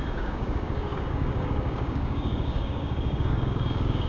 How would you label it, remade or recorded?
remade